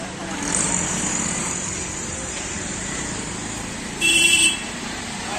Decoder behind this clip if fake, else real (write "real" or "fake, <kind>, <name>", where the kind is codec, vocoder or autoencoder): fake, vocoder, BigVGAN v2